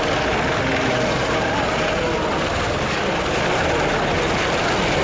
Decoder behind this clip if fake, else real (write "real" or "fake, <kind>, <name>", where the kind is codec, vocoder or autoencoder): real